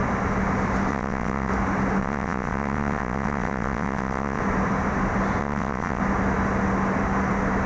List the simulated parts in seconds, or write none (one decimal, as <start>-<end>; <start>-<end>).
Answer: 0.9-1.5; 2.0-4.4; 5.4-6.0